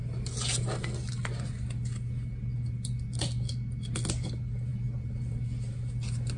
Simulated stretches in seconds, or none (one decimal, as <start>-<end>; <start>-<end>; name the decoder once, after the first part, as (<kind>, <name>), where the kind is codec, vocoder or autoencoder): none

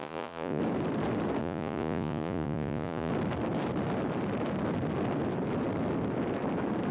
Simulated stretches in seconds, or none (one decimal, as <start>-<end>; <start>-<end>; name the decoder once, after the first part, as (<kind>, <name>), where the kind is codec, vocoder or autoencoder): 0.0-0.6 (vocoder, Vocos); 1.4-3.1

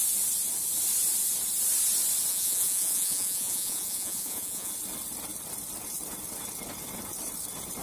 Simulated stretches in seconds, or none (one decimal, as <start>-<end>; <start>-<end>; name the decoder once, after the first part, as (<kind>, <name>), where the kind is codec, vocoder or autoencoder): 2.3-4.7 (vocoder, Vocos)

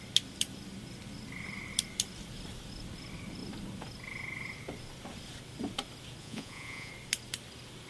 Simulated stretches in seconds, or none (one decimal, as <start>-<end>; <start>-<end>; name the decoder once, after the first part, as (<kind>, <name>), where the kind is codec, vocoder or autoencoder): 6.2-6.9 (vocoder, Vocos)

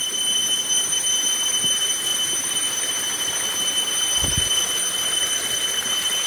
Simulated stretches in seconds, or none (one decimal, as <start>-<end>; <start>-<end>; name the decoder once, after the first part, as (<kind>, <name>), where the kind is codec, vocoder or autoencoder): none

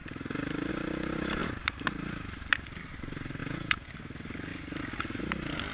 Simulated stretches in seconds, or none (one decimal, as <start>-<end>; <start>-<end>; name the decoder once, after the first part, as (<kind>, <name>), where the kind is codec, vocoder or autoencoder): 3.4-3.9 (vocoder, Vocos)